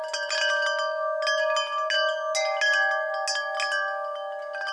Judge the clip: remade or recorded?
recorded